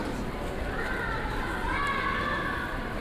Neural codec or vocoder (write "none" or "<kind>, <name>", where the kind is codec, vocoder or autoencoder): vocoder, BigVGAN v2